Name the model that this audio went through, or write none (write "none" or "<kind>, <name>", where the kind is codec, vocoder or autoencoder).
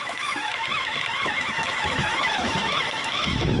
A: autoencoder, DAC-VAE